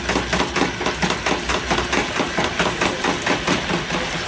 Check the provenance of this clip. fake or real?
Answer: real